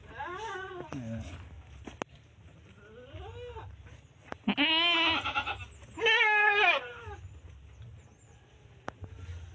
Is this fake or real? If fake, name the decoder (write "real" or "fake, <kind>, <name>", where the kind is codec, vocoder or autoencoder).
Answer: real